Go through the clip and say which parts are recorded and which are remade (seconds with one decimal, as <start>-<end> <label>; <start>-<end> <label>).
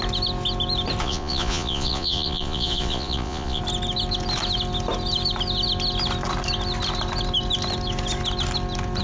0.0-1.0 recorded; 1.0-3.6 remade; 3.6-9.0 recorded